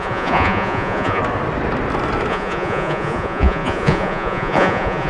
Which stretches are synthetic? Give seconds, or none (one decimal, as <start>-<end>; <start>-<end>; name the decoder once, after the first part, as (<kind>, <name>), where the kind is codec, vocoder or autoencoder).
0.0-1.2 (vocoder, Vocos); 2.3-5.1